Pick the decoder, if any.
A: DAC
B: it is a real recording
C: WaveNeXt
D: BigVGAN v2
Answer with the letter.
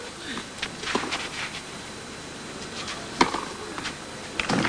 B